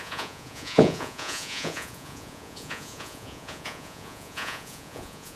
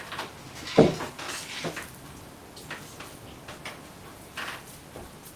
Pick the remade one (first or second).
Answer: first